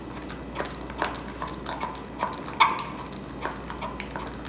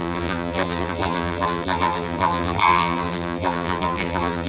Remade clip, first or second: second